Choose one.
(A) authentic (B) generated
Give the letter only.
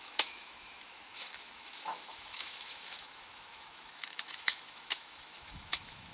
B